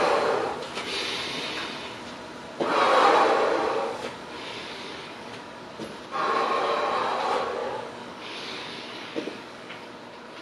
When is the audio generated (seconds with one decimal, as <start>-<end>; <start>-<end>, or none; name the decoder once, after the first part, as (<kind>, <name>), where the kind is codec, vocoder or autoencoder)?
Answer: 3.7-5.7 (codec, DAC); 7.6-9.9